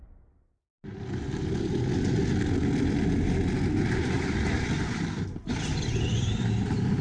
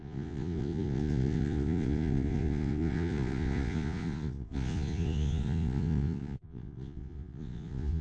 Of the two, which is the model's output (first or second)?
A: second